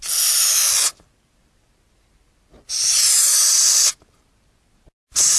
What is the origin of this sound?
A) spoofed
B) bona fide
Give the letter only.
B